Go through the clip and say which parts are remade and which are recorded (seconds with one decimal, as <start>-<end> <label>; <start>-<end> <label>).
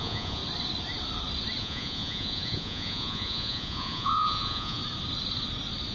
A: 0.0-0.4 remade; 0.4-1.6 recorded; 1.6-4.8 remade; 4.8-5.9 recorded